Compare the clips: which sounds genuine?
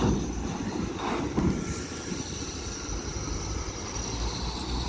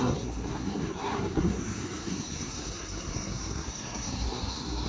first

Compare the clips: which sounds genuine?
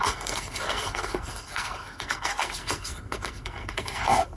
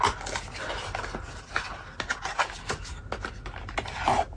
second